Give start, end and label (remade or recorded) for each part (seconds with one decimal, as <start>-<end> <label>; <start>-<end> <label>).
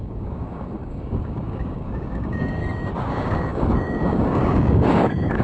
0.0-2.6 remade; 2.6-3.1 recorded; 3.1-5.4 remade